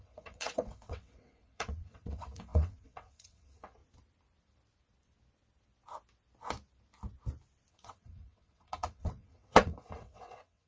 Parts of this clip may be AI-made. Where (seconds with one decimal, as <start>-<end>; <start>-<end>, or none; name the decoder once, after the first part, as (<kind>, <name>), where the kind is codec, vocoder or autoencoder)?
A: 0.0-3.8 (vocoder, WaveNeXt); 7.7-10.7